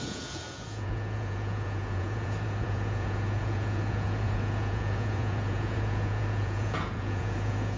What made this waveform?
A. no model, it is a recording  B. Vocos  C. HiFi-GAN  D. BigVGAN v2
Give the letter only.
B